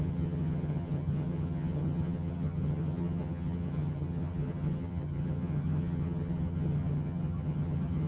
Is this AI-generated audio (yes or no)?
yes